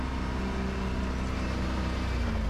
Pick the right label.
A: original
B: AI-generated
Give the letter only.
A